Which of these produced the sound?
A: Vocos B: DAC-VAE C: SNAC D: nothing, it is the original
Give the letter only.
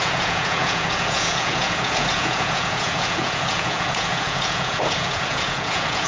A